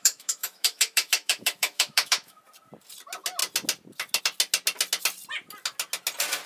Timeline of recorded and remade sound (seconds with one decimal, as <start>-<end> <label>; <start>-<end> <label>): 0.0-2.4 remade; 2.4-6.5 recorded